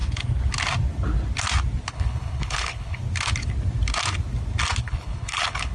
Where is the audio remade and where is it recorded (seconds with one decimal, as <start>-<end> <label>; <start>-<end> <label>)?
0.0-1.9 recorded; 1.9-3.0 remade; 3.0-4.8 recorded; 4.8-5.7 remade

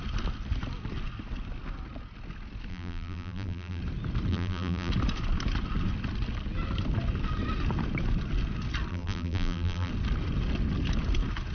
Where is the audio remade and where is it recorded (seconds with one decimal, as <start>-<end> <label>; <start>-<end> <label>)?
0.0-2.7 recorded; 2.7-3.8 remade; 3.8-4.3 recorded; 4.3-4.9 remade; 4.9-8.9 recorded; 8.9-9.9 remade; 9.9-11.5 recorded

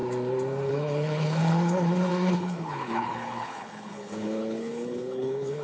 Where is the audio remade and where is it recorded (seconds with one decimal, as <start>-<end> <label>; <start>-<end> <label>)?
0.0-0.7 recorded; 0.7-5.6 remade

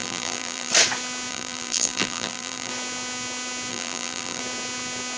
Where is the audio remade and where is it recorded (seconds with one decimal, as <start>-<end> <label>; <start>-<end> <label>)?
0.0-0.7 remade; 0.7-1.3 recorded; 1.3-2.7 remade; 2.7-3.7 recorded; 3.7-4.4 remade; 4.4-5.2 recorded

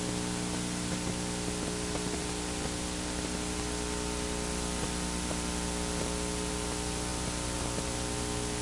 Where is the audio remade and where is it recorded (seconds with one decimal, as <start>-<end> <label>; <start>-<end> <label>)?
0.0-8.6 recorded